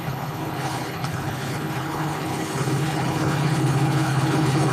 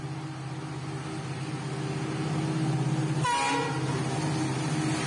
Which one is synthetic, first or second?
first